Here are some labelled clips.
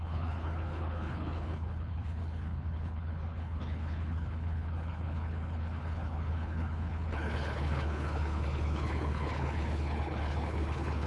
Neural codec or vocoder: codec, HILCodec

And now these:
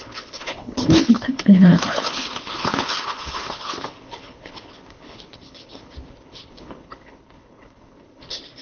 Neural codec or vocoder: codec, HILCodec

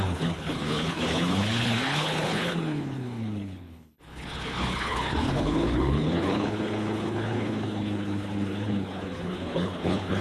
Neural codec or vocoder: codec, HILCodec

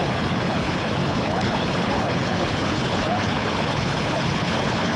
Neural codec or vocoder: codec, HILCodec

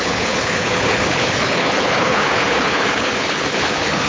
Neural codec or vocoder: codec, HILCodec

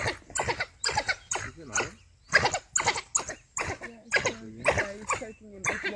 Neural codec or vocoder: none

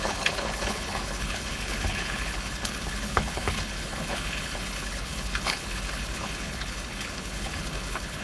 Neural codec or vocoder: codec, HILCodec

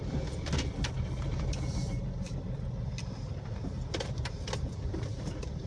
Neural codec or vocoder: none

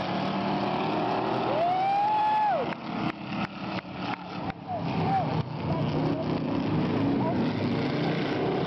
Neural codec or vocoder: none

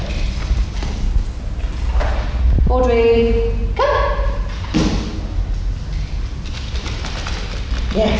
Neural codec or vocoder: none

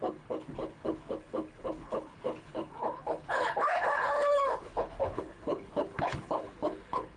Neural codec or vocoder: codec, HILCodec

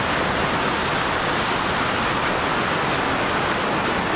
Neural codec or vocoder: none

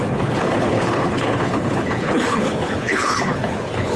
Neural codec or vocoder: codec, HILCodec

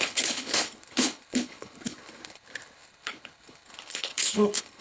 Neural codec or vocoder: codec, HILCodec